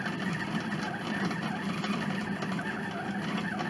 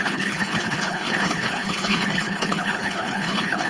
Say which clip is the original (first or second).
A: first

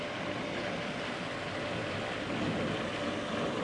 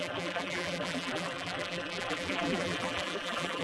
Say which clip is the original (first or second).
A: first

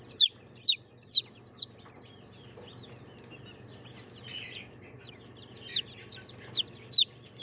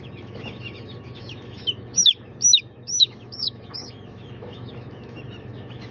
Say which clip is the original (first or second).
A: first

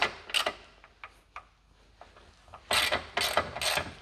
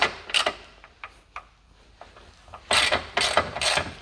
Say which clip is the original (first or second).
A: first